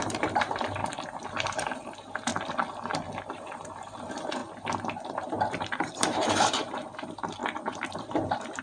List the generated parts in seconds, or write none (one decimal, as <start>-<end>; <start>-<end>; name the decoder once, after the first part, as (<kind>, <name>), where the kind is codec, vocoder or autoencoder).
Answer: 0.0-0.8 (vocoder, BigVGAN v2); 1.3-2.3; 3.3-4.4; 5.1-8.6

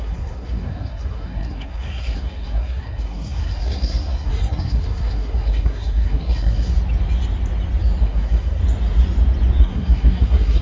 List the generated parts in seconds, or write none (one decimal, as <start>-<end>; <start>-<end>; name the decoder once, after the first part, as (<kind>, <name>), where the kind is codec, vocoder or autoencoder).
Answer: 0.0-6.7 (codec, SNAC); 8.0-8.6; 9.6-10.6

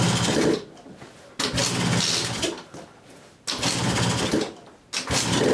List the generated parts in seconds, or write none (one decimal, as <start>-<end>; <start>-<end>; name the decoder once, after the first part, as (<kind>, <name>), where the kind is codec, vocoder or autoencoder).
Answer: none

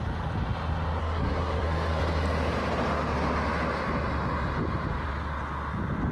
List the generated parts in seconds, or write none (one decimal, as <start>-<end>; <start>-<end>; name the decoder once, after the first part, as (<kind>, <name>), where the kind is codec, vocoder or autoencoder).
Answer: 1.0-2.0 (codec, SNAC)

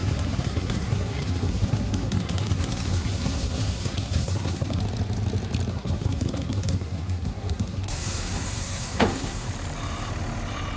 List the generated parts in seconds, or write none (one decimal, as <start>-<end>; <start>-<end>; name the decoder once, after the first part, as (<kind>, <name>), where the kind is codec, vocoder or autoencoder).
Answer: 0.0-4.8 (codec, SNAC); 5.7-9.5

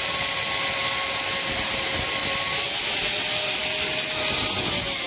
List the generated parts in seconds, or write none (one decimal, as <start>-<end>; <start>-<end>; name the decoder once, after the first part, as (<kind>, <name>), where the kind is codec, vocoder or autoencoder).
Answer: none

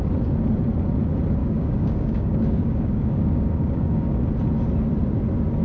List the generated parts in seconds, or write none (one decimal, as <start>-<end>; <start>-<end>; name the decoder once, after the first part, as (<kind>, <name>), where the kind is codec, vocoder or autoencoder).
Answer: 1.4-4.2 (codec, DAC)

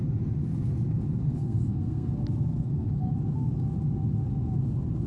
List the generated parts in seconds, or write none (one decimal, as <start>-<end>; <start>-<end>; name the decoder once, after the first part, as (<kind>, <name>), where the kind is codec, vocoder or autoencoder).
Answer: 1.2-2.1 (codec, SNAC); 2.5-3.1